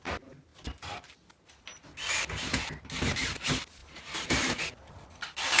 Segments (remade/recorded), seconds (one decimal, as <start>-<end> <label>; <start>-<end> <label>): 0.0-3.8 recorded; 3.8-4.4 remade; 4.4-5.6 recorded